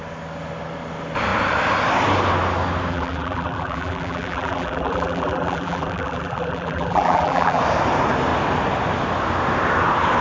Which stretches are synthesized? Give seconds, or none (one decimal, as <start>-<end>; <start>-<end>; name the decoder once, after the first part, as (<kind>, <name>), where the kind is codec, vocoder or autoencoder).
2.9-7.6 (vocoder, BigVGAN v2)